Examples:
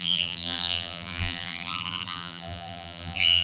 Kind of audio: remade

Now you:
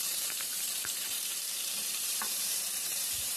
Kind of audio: remade